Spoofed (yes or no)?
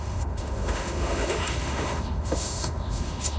yes